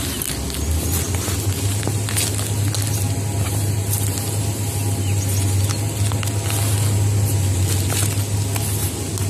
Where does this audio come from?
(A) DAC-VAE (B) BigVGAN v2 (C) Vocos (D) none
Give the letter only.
D